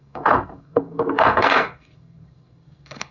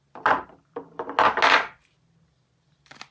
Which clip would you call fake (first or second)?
first